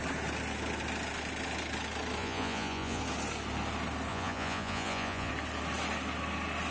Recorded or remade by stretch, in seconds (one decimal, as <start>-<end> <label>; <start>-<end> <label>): 0.0-2.2 recorded; 2.2-3.0 remade; 3.0-4.1 recorded; 4.1-5.3 remade; 5.3-6.7 recorded